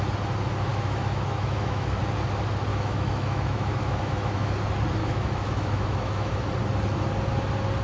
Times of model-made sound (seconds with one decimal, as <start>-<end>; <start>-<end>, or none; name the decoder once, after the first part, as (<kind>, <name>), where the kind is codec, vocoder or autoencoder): 0.7-2.0 (autoencoder, DAC-VAE); 2.7-4.5; 5.0-6.3